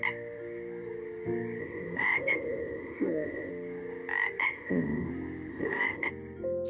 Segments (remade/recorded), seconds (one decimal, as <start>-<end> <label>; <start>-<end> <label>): 0.0-1.6 recorded; 1.6-3.5 remade; 3.5-4.4 recorded; 4.4-5.1 remade; 5.1-5.5 recorded; 5.5-6.1 remade; 6.1-6.7 recorded